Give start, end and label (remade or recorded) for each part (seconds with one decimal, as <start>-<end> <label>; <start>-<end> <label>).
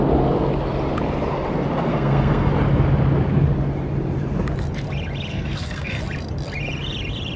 0.0-1.9 recorded; 1.9-2.5 remade; 2.5-5.3 recorded; 5.3-6.0 remade; 6.0-7.4 recorded